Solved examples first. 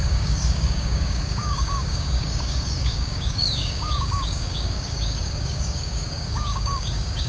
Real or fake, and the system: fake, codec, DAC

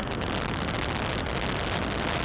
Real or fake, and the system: real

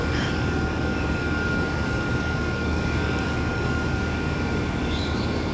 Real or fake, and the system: fake, codec, DAC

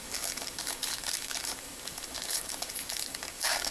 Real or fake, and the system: fake, codec, DAC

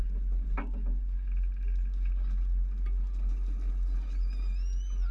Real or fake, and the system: real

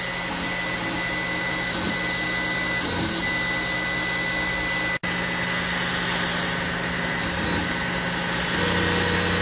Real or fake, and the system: real